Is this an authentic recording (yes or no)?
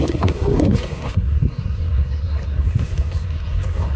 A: no